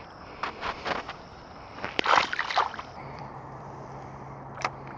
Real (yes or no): no